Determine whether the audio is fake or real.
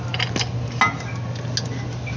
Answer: real